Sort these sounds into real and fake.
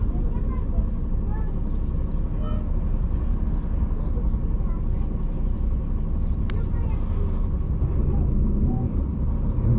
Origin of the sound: real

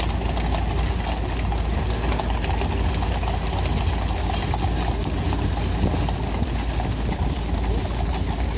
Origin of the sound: real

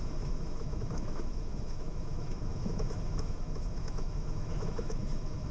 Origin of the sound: fake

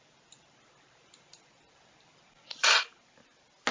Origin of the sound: real